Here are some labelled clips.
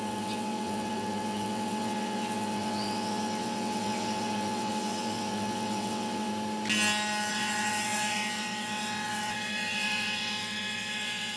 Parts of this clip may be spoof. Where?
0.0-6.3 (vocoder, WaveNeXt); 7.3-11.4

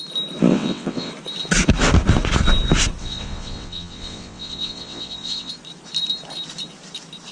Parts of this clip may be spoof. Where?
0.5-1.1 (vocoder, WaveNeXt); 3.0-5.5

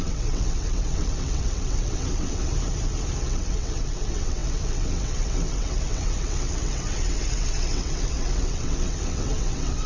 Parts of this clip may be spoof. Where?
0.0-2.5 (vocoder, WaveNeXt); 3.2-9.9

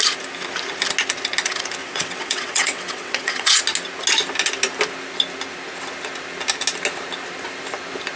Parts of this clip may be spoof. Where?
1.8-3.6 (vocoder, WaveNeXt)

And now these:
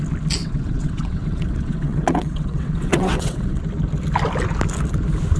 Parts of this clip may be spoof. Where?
0.4-3.6 (vocoder, WaveNeXt)

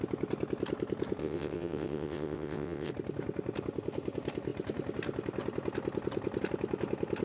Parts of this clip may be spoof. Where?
1.2-2.9 (vocoder, WaveNeXt)